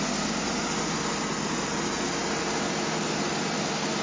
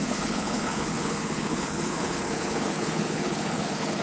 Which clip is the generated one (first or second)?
second